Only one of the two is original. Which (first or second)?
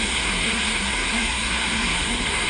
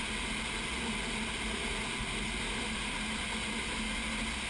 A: second